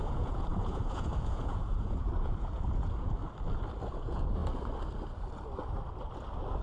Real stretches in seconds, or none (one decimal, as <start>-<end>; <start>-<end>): 3.2-3.9; 4.4-6.6